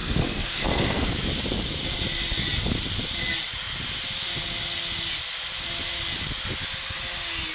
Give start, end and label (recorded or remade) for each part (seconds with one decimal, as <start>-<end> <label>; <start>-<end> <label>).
0.0-1.1 remade; 1.1-7.5 recorded